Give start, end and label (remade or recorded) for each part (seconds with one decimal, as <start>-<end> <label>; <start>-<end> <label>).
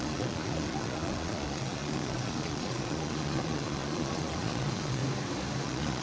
0.0-5.0 remade; 5.0-5.6 recorded; 5.6-6.0 remade